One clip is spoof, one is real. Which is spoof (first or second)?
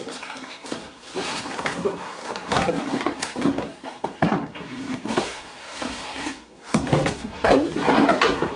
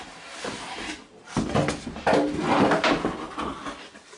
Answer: first